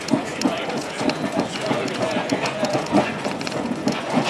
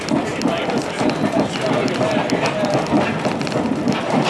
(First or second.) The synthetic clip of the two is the first